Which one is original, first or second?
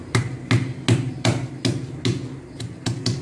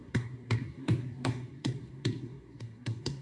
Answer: first